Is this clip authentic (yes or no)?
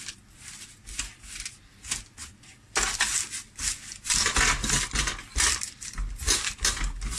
yes